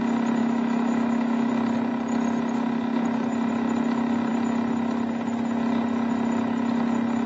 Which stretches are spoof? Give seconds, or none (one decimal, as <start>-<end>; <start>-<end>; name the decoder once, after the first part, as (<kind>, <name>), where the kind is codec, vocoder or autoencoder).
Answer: 0.4-1.5 (autoencoder, DAC-VAE)